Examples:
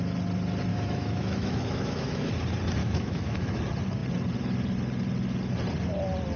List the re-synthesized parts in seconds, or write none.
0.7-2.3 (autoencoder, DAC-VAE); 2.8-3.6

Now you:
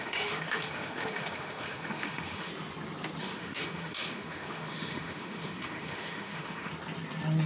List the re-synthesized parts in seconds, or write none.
0.0-2.5 (autoencoder, DAC-VAE); 3.2-6.7

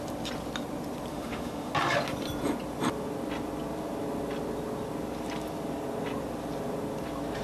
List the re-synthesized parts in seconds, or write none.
1.1-1.7 (autoencoder, DAC-VAE)

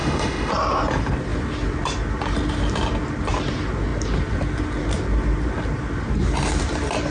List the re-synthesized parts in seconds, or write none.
0.0-0.5 (autoencoder, DAC-VAE)

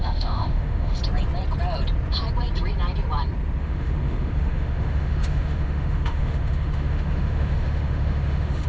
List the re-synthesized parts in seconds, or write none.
0.0-1.0 (autoencoder, DAC-VAE); 3.6-8.7

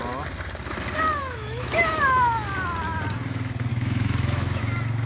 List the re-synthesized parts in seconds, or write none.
1.2-2.0 (autoencoder, DAC-VAE); 3.7-4.6